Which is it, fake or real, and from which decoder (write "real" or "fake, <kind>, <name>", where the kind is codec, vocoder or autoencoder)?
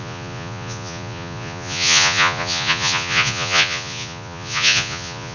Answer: fake, vocoder, Vocos